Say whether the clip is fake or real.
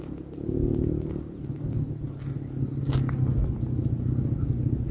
real